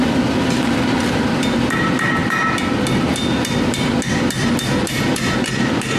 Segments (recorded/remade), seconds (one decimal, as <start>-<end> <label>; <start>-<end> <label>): 0.0-6.0 recorded